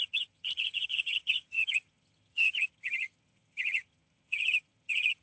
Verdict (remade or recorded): remade